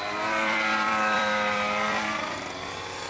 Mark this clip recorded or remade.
remade